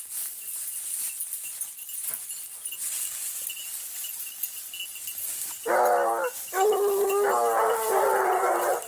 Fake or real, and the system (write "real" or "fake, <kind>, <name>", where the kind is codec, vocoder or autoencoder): real